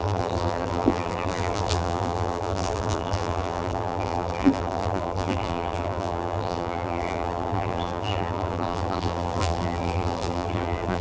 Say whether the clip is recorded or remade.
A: remade